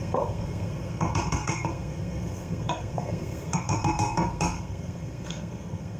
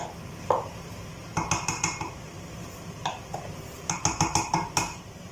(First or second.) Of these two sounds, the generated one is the first